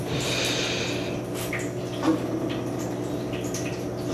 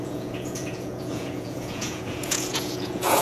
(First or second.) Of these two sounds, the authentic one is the first